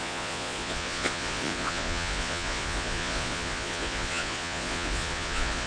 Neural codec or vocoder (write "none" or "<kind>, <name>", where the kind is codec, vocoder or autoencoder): vocoder, Vocos